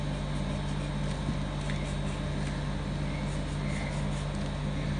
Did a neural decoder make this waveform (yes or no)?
no